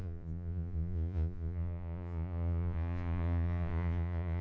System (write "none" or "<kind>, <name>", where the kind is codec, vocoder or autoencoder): vocoder, Vocos